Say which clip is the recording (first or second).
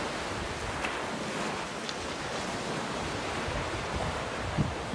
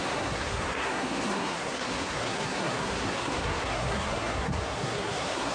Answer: first